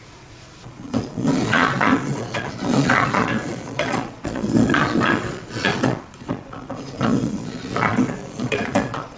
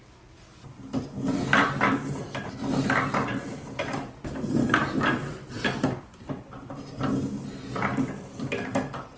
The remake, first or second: first